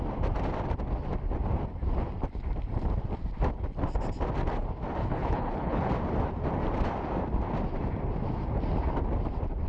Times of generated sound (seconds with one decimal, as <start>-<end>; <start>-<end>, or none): 5.0-5.9